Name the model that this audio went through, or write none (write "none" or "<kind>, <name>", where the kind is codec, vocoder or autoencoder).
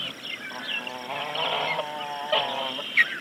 vocoder, BigVGAN v2